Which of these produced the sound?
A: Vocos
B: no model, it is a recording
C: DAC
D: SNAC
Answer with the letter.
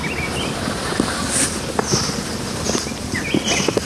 B